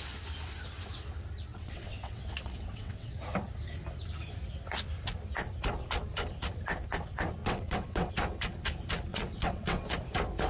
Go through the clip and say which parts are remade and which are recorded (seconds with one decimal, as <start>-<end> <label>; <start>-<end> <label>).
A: 0.0-1.5 recorded; 1.5-3.1 remade; 3.1-7.4 recorded; 7.4-8.1 remade; 8.1-9.1 recorded; 9.1-9.8 remade; 9.8-10.5 recorded